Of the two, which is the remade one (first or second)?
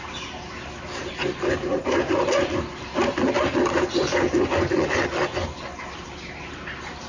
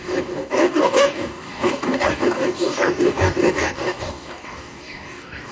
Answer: second